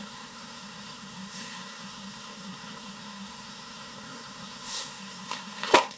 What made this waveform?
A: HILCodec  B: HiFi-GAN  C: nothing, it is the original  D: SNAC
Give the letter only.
D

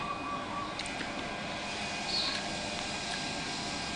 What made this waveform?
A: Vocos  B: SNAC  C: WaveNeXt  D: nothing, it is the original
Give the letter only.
D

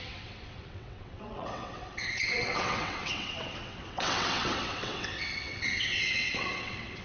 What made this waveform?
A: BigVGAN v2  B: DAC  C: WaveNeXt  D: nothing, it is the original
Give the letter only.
C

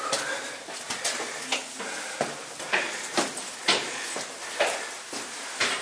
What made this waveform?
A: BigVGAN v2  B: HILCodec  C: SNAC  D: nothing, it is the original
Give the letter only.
D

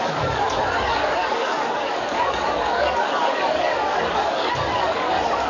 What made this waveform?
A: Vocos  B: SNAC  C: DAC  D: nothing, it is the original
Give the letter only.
C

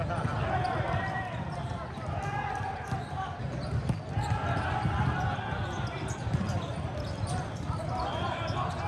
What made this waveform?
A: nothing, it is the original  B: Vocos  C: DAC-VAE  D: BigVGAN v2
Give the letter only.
A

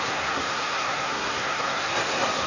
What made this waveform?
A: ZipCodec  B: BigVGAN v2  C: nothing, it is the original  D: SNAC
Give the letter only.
D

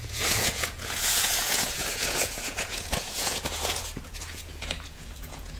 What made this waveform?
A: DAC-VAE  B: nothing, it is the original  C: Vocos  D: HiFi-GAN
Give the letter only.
C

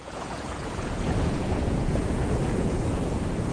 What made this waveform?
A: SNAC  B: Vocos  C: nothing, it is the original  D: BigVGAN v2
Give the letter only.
B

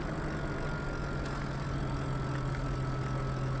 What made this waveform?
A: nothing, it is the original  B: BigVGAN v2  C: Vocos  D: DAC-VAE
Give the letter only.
A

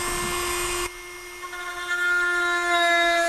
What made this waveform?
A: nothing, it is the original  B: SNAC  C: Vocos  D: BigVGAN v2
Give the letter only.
A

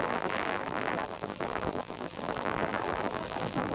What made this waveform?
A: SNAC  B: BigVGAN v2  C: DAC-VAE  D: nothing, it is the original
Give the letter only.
B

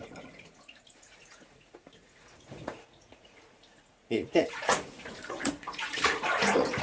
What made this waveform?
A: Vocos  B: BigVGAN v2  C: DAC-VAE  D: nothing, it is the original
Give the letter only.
A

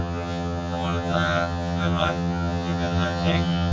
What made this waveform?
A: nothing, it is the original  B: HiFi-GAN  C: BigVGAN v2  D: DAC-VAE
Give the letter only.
B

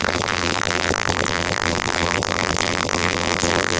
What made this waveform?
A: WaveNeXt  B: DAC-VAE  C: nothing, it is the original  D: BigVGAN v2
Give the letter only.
D